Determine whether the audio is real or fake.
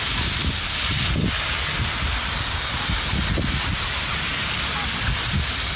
real